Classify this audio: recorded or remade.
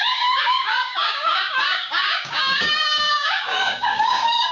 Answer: remade